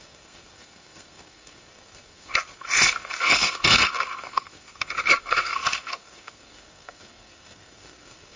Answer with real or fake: fake